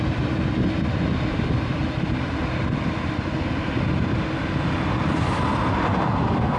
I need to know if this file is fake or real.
real